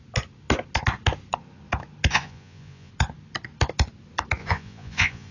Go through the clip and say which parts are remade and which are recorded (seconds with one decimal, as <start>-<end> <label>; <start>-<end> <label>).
0.0-2.1 recorded; 2.1-2.9 remade; 2.9-4.4 recorded; 4.4-5.3 remade